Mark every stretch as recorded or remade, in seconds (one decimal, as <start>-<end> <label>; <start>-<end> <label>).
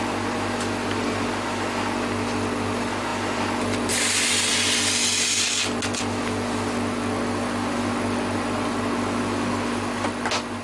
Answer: 0.0-10.6 recorded